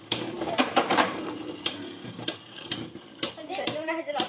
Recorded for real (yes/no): no